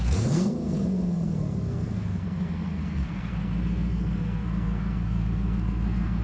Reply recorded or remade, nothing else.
remade